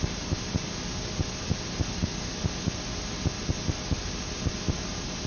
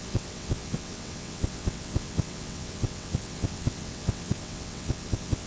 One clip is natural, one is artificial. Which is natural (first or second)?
first